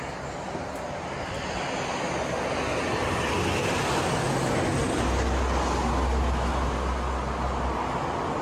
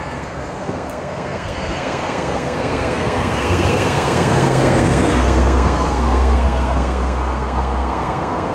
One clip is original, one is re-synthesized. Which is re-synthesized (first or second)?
second